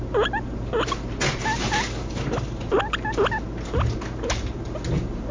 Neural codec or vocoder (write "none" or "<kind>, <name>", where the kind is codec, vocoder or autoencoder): none